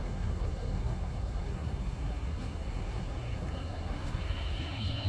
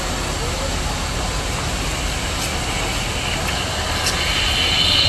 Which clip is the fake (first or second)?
first